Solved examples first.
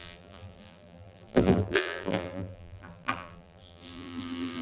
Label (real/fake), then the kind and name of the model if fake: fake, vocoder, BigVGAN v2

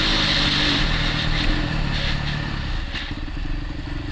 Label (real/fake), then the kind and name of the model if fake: real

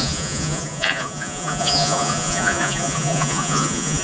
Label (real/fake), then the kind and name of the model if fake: fake, vocoder, Vocos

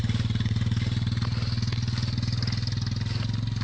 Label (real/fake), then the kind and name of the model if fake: real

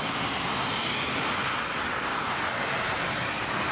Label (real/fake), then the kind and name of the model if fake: real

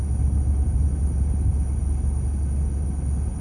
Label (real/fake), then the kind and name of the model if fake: real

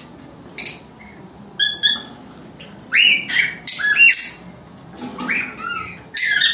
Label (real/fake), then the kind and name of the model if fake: real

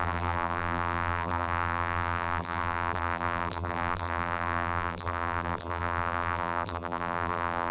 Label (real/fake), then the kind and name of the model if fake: fake, vocoder, BigVGAN v2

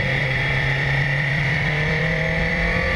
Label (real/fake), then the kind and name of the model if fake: fake, vocoder, BigVGAN v2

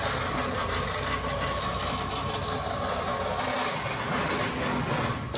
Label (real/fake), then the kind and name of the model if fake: real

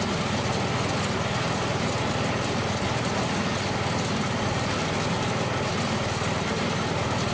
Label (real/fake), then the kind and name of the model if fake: real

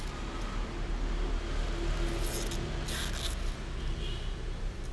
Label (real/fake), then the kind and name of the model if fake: real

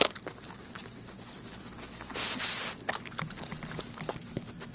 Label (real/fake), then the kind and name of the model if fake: real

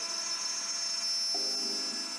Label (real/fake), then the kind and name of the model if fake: real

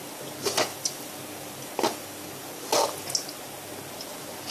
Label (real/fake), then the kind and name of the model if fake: real